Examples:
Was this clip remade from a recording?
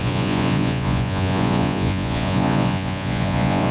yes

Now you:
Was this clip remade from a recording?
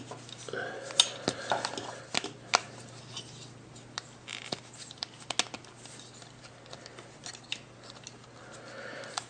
no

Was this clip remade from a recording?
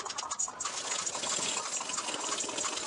no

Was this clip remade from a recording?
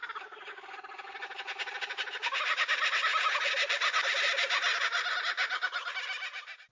no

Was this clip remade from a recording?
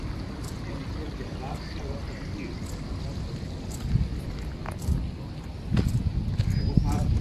no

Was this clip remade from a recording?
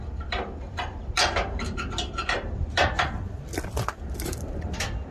no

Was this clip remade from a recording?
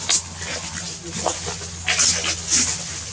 no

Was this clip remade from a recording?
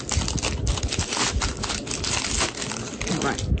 no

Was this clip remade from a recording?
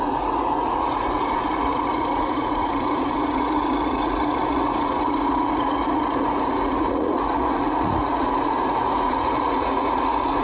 yes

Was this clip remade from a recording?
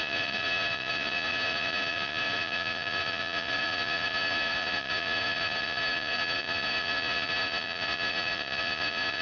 yes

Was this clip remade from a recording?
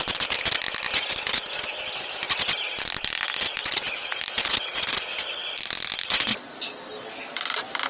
no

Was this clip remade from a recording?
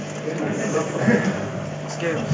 no